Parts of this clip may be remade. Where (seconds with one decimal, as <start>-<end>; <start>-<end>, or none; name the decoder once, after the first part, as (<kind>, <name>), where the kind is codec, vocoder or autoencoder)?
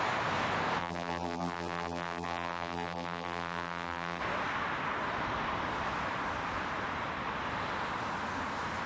0.8-4.2 (vocoder, BigVGAN v2)